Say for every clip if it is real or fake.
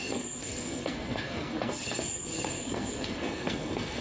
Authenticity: fake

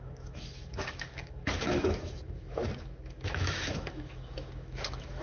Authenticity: fake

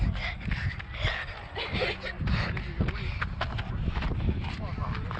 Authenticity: real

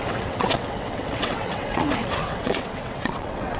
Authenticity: fake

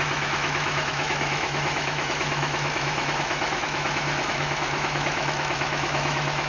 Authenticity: fake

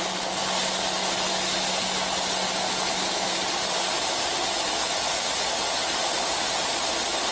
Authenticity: real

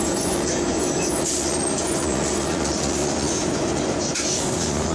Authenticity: fake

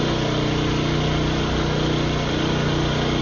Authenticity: real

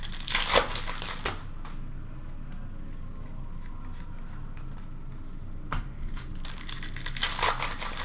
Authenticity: real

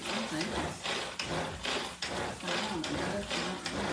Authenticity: real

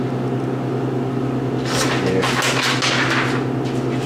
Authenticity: real